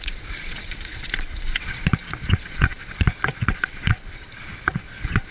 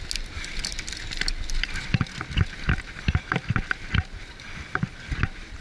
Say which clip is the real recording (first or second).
second